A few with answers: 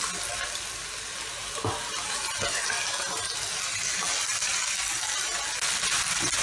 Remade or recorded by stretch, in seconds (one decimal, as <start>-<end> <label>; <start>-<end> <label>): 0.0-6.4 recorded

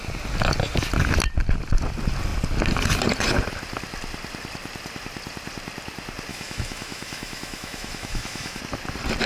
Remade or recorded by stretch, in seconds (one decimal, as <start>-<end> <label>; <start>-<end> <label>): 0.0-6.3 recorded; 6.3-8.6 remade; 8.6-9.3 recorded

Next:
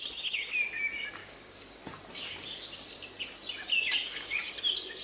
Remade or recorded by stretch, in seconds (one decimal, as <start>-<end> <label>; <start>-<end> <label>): 0.0-1.2 recorded; 1.2-1.8 remade; 1.8-4.0 recorded; 4.0-4.5 remade; 4.5-5.0 recorded

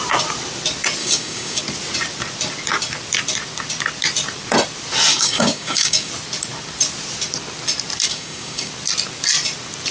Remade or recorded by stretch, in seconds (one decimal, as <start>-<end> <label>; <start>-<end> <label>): 0.0-1.0 recorded; 1.0-1.6 remade; 1.6-5.1 recorded; 5.1-6.1 remade; 6.1-8.1 recorded; 8.1-8.7 remade; 8.7-9.9 recorded